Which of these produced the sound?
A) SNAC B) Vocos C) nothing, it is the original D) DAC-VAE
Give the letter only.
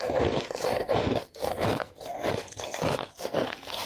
A